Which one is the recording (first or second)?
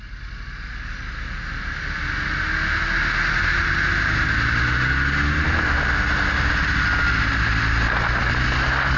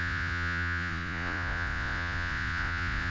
first